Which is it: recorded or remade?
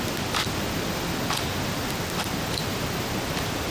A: remade